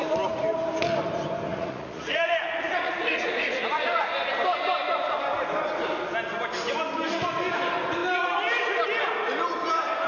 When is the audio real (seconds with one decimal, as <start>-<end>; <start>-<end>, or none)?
0.0-1.5; 4.3-10.1